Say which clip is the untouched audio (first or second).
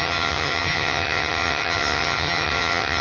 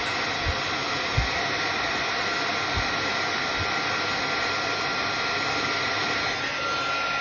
second